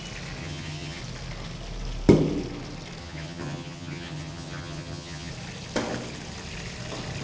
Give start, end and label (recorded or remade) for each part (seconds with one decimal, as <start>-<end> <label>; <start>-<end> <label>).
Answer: 0.0-0.4 recorded; 0.4-1.0 remade; 1.0-3.0 recorded; 3.0-5.3 remade; 5.3-7.2 recorded